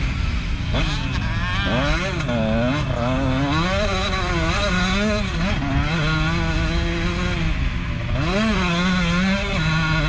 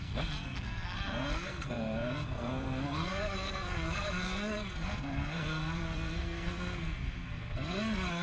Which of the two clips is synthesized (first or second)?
second